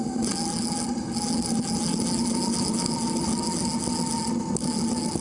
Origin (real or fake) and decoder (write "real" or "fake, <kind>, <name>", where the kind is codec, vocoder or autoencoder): real